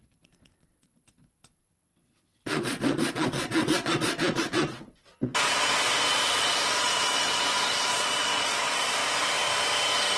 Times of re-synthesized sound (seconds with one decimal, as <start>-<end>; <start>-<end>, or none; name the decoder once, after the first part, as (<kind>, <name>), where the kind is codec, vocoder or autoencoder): 0.0-9.0 (vocoder, Vocos)